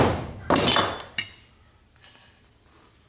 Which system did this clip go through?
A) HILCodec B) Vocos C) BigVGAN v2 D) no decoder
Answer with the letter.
D